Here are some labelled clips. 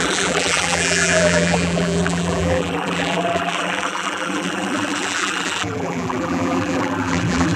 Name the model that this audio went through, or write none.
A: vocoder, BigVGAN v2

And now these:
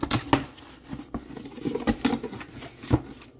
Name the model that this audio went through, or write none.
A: none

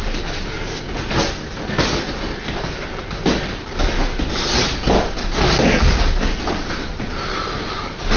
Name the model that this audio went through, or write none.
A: none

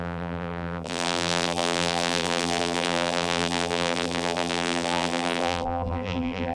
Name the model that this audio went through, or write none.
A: vocoder, BigVGAN v2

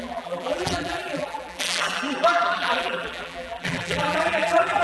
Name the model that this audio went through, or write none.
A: vocoder, BigVGAN v2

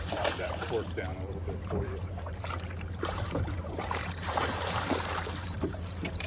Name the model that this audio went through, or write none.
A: vocoder, BigVGAN v2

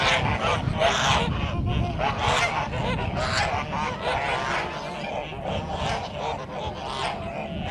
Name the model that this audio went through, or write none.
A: none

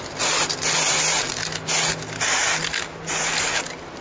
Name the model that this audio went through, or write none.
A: none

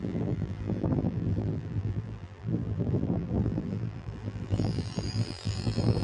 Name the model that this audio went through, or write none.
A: vocoder, BigVGAN v2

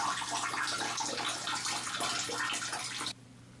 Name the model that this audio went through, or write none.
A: none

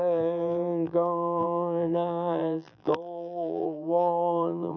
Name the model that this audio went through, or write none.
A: vocoder, BigVGAN v2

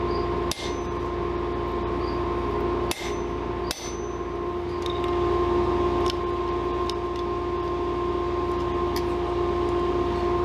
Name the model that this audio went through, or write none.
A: none